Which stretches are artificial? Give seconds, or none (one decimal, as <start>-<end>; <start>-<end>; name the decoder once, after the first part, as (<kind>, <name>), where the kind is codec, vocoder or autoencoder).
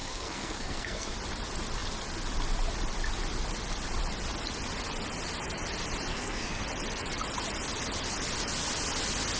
0.0-1.1 (codec, SNAC); 6.1-6.6